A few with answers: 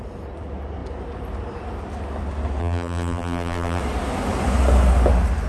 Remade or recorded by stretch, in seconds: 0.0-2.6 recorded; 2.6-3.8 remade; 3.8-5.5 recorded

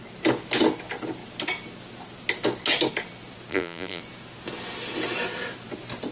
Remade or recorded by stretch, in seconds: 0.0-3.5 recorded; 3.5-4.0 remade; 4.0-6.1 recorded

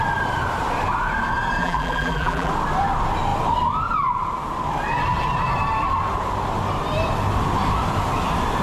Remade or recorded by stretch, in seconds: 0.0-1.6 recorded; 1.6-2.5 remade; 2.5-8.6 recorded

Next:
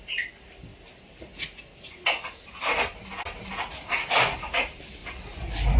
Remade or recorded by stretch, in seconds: 0.0-5.8 recorded

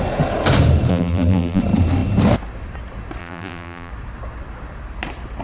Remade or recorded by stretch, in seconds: 0.0-0.9 recorded; 0.9-1.6 remade; 1.6-3.2 recorded; 3.2-3.9 remade; 3.9-5.4 recorded

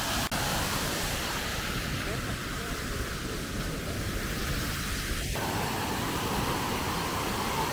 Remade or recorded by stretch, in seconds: 0.0-0.5 recorded; 0.5-1.1 remade; 1.1-1.5 recorded; 1.5-3.5 remade; 3.5-7.7 recorded

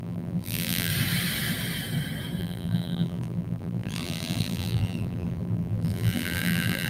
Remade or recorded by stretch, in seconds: 0.0-0.9 remade; 0.9-2.4 recorded; 2.4-6.9 remade

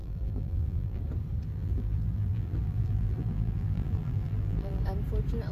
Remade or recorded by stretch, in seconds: 0.0-1.0 remade; 1.0-1.5 recorded; 1.5-4.8 remade; 4.8-5.5 recorded